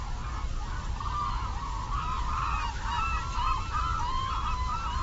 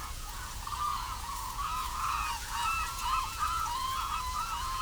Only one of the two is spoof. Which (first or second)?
second